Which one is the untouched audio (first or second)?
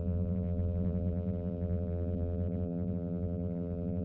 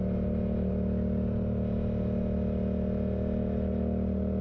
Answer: second